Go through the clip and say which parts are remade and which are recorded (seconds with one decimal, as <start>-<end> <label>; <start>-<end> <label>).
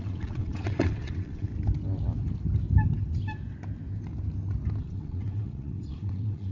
0.0-1.5 remade; 1.5-4.8 recorded; 4.8-6.5 remade